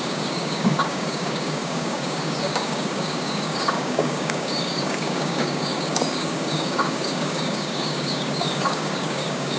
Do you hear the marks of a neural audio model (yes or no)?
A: yes